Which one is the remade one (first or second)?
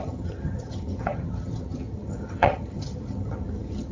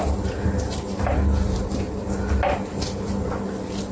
first